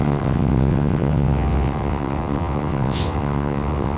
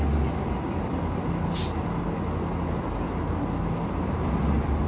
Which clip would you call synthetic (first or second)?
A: first